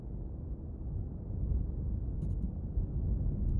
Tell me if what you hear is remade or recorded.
recorded